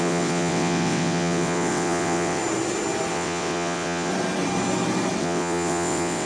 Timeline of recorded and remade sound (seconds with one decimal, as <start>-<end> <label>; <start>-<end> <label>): 0.0-2.4 remade; 2.4-3.1 recorded; 3.1-4.1 remade; 4.1-5.2 recorded; 5.2-6.3 remade